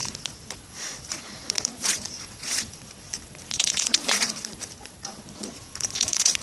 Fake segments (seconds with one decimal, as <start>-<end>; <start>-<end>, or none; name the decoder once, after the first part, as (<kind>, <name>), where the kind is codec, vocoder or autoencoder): 0.0-6.4 (vocoder, Vocos)